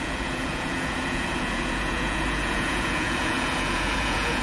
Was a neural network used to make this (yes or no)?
yes